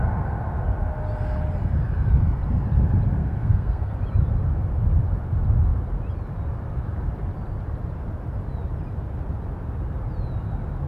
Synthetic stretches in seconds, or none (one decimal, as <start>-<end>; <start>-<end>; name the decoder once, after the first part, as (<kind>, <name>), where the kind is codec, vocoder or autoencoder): 3.2-3.9 (codec, SNAC)